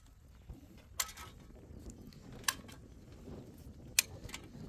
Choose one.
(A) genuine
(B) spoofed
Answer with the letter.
A